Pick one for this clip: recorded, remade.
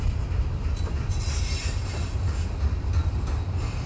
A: recorded